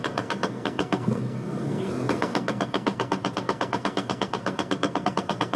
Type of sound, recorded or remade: remade